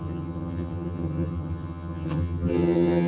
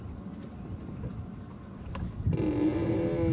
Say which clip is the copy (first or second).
first